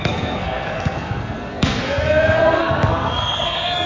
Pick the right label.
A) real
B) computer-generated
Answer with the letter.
B